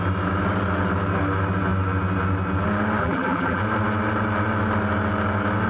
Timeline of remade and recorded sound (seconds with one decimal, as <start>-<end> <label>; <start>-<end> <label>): 0.0-3.0 recorded; 3.0-3.6 remade; 3.6-5.7 recorded